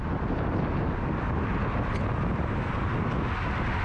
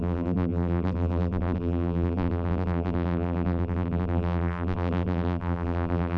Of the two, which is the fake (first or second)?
second